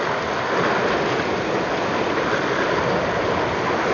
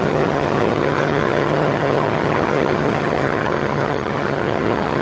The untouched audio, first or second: first